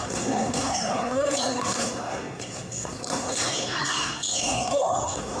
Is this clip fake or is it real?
fake